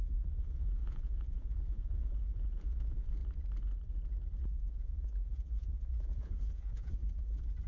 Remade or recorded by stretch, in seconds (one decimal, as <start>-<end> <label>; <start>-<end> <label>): 0.0-3.2 remade; 3.2-4.5 recorded; 4.5-7.0 remade; 7.0-7.7 recorded